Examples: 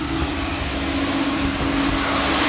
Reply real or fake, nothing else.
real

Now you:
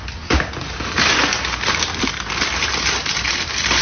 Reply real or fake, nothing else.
real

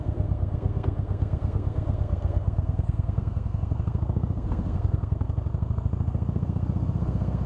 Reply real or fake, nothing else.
fake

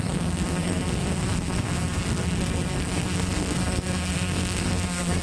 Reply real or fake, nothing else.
fake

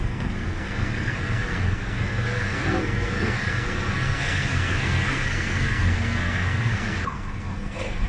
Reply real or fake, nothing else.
fake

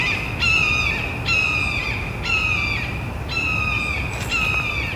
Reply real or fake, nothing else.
real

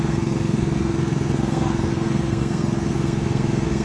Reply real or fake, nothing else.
fake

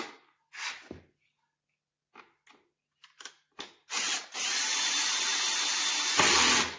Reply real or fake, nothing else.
real